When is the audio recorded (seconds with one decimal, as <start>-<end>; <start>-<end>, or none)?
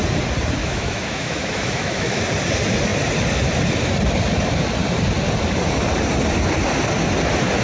0.0-0.6; 2.2-7.6